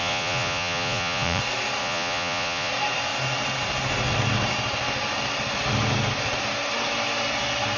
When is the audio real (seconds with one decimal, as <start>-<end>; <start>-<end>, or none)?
1.4-1.8; 2.7-7.8

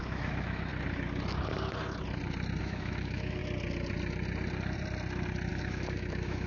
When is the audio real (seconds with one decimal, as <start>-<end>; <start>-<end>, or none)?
0.7-2.6; 3.4-5.5

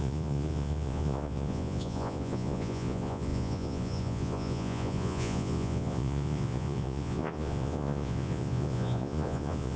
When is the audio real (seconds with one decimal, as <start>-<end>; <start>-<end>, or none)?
none